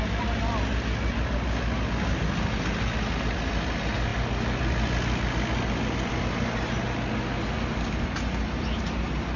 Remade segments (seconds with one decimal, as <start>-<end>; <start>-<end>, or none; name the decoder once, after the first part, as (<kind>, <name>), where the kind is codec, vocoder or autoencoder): none